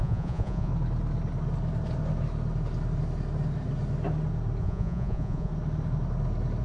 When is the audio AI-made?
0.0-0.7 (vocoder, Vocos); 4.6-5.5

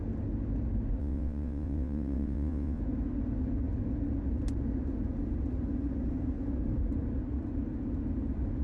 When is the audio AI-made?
1.0-2.8 (vocoder, WaveNeXt)

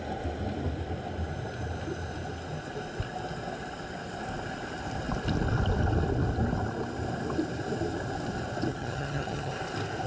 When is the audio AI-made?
8.7-9.5 (vocoder, HiFi-GAN)

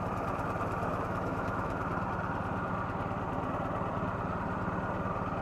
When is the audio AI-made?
0.9-1.9 (autoencoder, DAC-VAE)

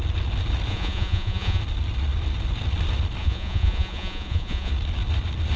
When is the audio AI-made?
0.7-1.6 (vocoder, Vocos); 3.2-4.7